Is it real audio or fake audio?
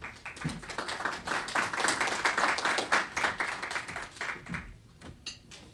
real